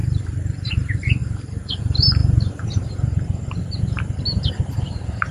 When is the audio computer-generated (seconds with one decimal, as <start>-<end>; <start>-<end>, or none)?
0.0-2.2; 4.5-5.3